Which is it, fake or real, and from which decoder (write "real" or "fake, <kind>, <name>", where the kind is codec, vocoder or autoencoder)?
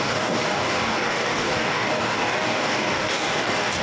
fake, codec, DAC